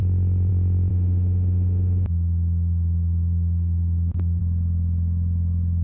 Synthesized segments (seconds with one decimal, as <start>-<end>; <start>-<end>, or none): 0.9-4.4